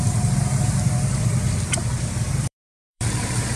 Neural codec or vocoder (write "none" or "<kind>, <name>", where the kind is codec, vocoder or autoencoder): vocoder, BigVGAN v2